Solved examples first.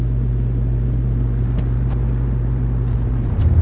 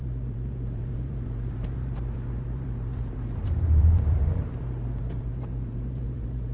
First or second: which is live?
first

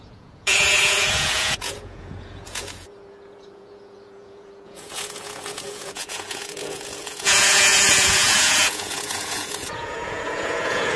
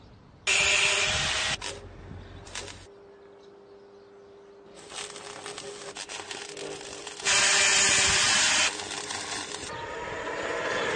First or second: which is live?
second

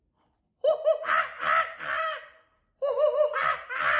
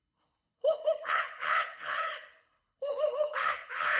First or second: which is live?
first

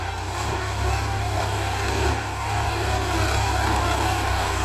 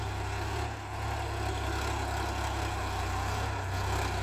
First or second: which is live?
second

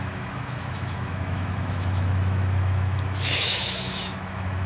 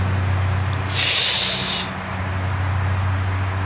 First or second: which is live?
second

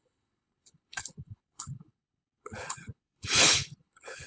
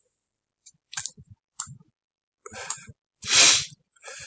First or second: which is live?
second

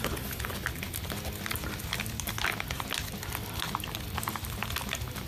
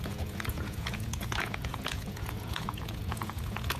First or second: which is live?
first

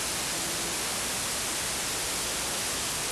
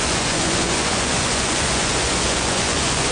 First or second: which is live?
first